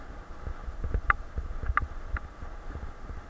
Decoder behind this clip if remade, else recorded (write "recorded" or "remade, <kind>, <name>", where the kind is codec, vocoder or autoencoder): recorded